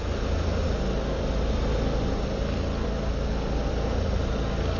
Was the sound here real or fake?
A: real